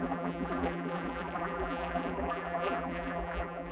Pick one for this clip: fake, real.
fake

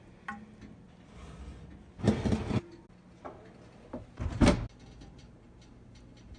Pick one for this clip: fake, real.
real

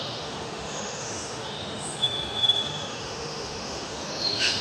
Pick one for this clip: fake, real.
fake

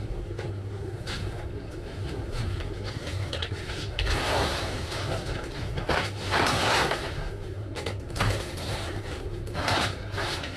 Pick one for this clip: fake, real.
fake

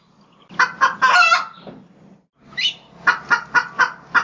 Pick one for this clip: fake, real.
real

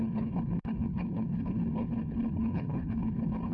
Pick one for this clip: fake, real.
fake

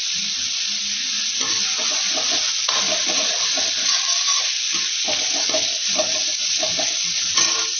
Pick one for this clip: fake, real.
real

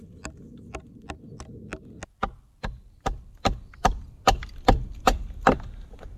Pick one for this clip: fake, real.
real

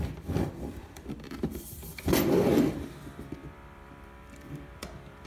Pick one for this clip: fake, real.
fake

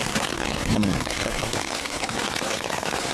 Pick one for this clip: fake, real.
fake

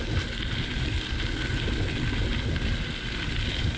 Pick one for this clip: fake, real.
real